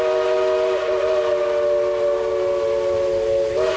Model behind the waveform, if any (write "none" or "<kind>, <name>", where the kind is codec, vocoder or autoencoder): none